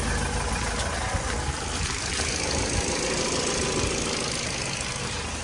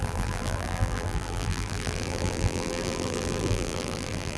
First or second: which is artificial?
second